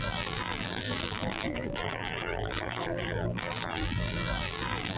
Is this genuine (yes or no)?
no